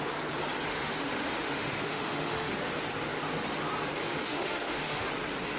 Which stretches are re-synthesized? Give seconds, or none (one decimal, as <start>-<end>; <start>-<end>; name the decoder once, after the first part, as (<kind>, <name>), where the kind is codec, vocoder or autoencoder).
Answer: 0.7-2.5 (autoencoder, DAC-VAE); 4.0-5.1